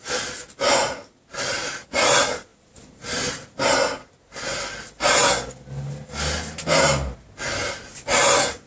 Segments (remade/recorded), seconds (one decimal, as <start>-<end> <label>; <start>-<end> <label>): 0.0-8.7 recorded

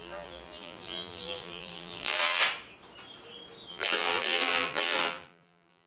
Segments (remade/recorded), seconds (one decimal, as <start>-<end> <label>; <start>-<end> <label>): 0.0-2.4 remade; 2.4-3.7 recorded; 3.7-5.9 remade

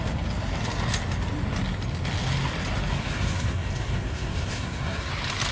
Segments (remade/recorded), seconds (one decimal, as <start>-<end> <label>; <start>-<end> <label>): 0.0-2.9 recorded; 2.9-5.1 remade; 5.1-5.5 recorded

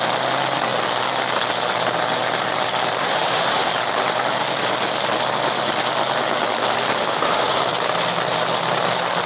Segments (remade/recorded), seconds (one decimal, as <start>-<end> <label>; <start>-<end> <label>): 0.0-3.0 recorded; 3.0-3.7 remade; 3.7-7.0 recorded; 7.0-7.6 remade; 7.6-9.3 recorded

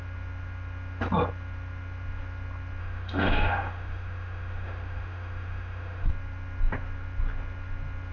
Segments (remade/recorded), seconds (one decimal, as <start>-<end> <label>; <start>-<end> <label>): 0.0-2.8 recorded; 2.8-6.1 remade; 6.1-8.1 recorded

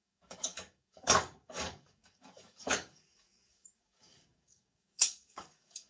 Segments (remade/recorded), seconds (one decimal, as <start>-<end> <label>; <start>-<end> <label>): 0.0-5.9 remade